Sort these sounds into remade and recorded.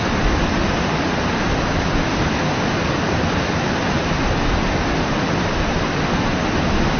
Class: recorded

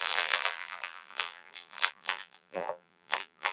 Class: remade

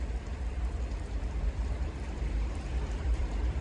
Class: remade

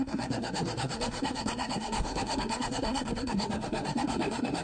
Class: remade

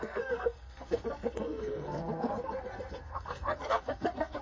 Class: remade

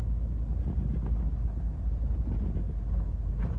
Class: recorded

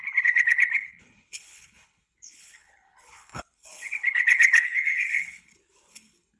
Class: remade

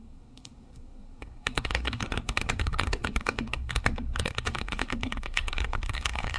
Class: remade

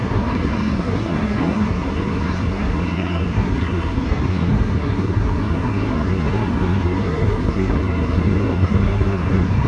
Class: remade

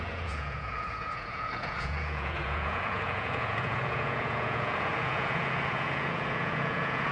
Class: remade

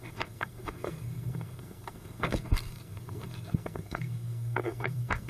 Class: remade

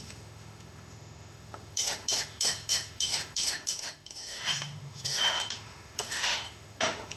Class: remade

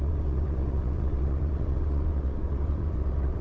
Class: remade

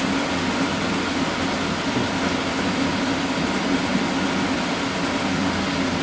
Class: recorded